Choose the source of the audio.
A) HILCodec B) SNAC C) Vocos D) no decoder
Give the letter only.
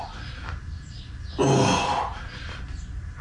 D